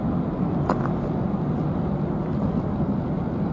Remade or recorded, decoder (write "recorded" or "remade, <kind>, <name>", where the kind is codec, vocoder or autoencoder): recorded